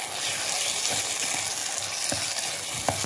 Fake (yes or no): no